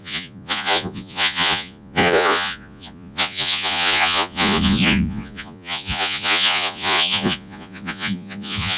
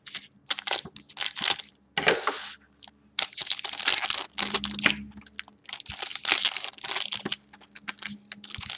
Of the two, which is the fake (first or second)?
first